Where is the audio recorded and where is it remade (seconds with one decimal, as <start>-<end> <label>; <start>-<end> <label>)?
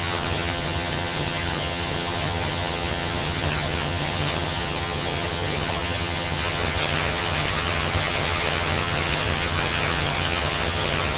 0.0-11.2 remade